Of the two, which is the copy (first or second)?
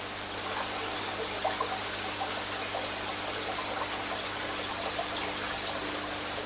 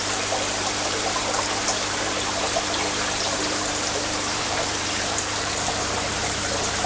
second